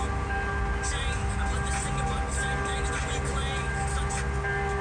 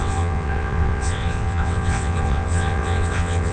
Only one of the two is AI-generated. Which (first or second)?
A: second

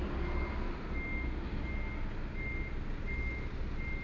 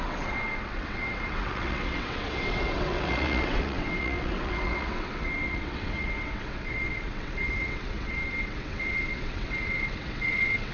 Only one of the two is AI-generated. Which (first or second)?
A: second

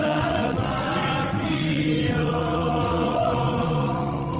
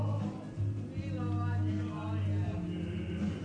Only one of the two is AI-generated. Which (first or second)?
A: first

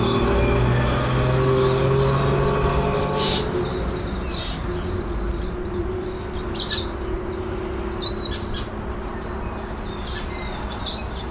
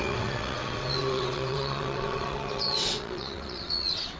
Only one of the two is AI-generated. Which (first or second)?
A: second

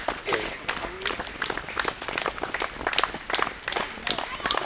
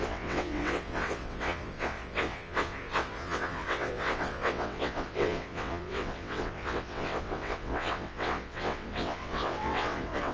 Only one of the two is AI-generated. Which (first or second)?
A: second